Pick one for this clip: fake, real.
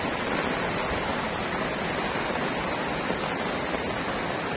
real